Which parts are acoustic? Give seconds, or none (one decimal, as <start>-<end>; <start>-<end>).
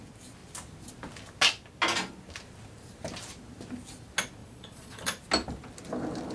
0.0-4.4; 5.0-6.3